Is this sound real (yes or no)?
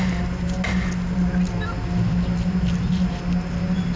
yes